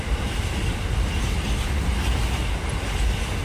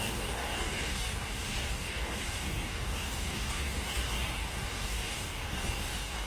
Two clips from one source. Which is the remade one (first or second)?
second